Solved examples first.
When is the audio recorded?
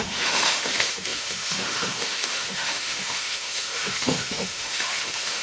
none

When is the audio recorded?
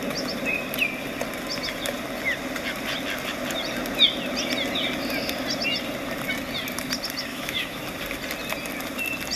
0.0-7.3; 7.8-9.4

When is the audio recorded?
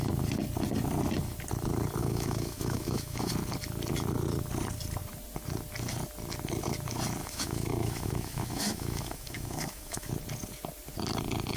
0.0-2.0; 3.3-7.2; 10.1-11.6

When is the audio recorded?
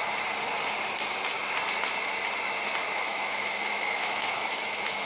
0.0-3.1